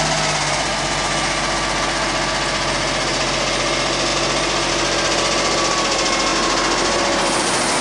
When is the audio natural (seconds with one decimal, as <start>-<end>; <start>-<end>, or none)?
0.0-7.8